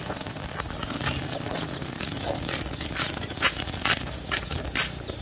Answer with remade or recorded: recorded